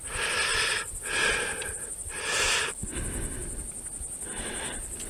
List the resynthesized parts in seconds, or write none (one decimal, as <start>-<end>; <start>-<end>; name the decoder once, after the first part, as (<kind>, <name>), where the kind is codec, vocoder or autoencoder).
0.5-1.7 (vocoder, BigVGAN v2)

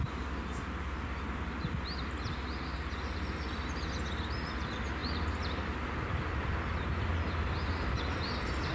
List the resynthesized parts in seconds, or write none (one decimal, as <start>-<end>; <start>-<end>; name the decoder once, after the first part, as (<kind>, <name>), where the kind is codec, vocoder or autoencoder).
5.0-6.5 (vocoder, BigVGAN v2)

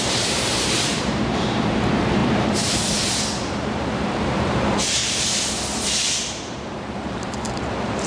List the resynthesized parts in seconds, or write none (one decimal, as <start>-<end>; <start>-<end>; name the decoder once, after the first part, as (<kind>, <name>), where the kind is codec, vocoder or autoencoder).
0.0-5.0 (vocoder, BigVGAN v2); 5.5-8.1

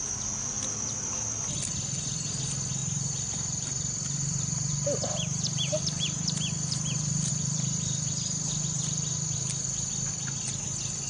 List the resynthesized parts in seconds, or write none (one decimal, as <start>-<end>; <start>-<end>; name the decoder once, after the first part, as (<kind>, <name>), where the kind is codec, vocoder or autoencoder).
2.8-7.3 (vocoder, BigVGAN v2)